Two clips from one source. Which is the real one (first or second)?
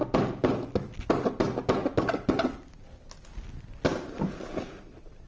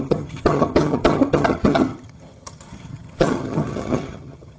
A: first